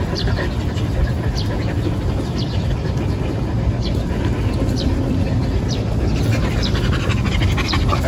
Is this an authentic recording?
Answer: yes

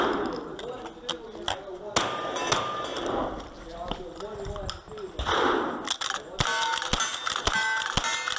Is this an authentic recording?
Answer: yes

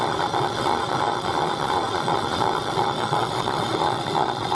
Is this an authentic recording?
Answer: no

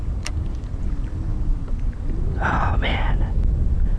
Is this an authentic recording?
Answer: yes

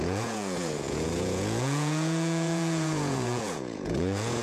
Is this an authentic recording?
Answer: no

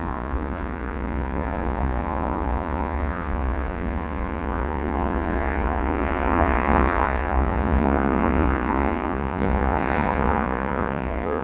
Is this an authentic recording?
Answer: no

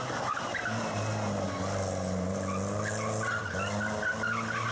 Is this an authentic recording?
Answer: yes